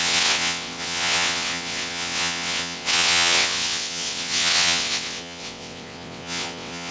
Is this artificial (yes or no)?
yes